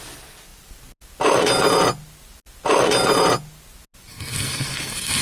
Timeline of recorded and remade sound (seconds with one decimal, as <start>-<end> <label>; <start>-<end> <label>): 0.0-4.1 recorded; 4.1-5.2 remade